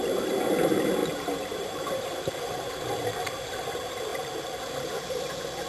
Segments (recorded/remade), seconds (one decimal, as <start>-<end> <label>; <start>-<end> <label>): 0.0-1.0 recorded; 1.0-2.9 remade; 2.9-5.7 recorded